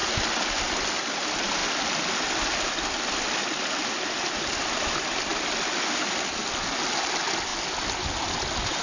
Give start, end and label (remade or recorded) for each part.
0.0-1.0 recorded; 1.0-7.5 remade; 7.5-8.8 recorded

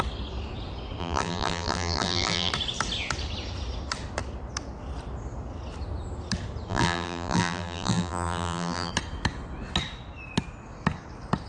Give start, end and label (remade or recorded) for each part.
0.0-1.0 recorded; 1.0-2.5 remade; 2.5-6.7 recorded; 6.7-8.9 remade; 8.9-11.5 recorded